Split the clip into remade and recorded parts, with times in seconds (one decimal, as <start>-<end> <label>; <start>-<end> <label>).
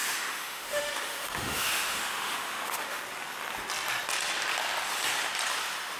0.0-3.0 remade; 3.0-6.0 recorded